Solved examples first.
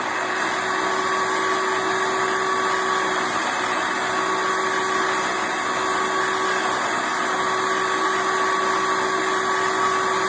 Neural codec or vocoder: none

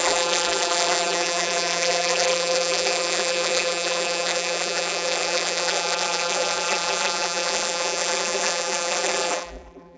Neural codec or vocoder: vocoder, BigVGAN v2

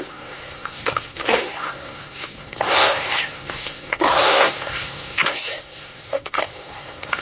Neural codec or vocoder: codec, SNAC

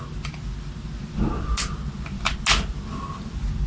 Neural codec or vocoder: none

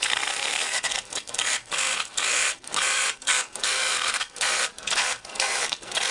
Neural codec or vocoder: codec, SNAC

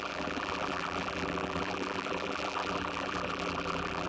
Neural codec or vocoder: vocoder, BigVGAN v2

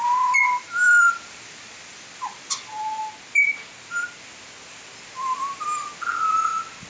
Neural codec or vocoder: none